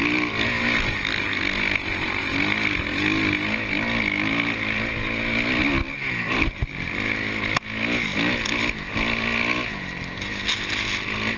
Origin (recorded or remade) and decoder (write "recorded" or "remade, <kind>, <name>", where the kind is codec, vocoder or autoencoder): recorded